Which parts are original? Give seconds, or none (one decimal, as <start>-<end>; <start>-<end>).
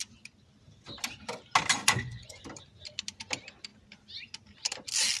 0.0-1.7; 2.4-5.2